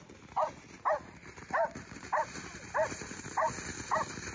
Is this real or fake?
real